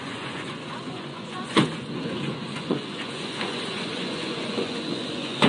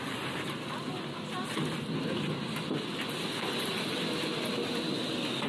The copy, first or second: first